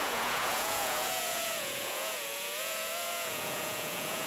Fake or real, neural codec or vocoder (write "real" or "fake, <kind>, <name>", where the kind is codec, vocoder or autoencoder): fake, vocoder, Vocos